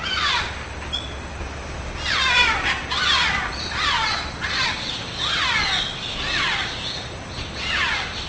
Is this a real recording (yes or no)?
no